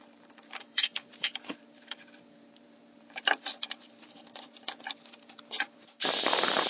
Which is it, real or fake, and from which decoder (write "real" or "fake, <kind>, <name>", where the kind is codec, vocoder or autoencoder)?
fake, vocoder, BigVGAN v2